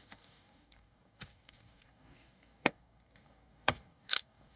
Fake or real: fake